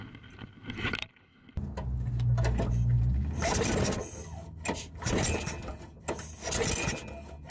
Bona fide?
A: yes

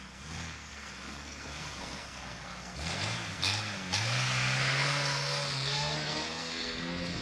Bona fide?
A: no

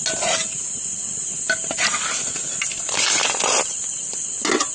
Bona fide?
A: yes